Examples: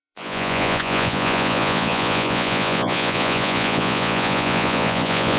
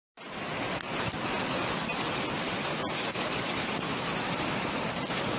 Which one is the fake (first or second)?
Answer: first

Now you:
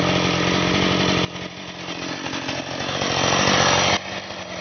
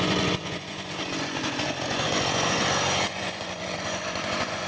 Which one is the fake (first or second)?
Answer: second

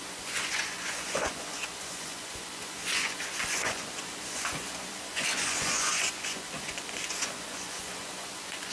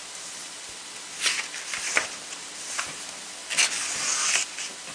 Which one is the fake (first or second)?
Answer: first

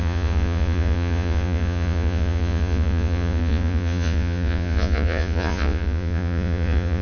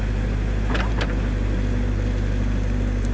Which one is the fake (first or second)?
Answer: first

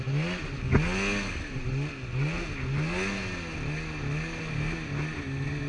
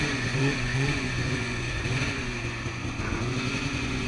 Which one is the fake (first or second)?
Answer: second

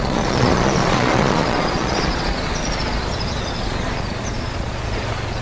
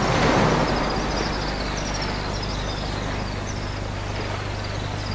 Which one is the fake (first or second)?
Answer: first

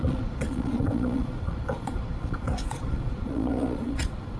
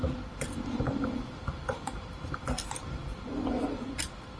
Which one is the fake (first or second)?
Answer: first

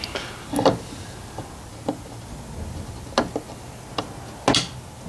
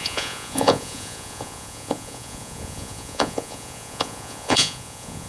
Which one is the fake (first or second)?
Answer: second